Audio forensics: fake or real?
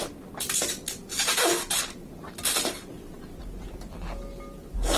real